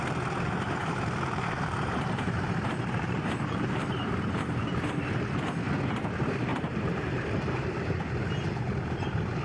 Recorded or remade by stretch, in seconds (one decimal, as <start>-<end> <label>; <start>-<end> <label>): 0.0-0.8 recorded; 0.8-4.1 remade; 4.1-6.5 recorded; 6.5-7.7 remade; 7.7-9.4 recorded